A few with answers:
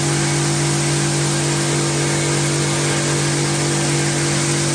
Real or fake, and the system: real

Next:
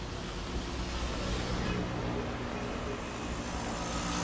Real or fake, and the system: real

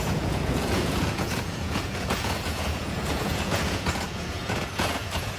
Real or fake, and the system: fake, vocoder, Vocos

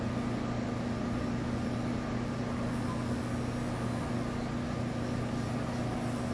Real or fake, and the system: real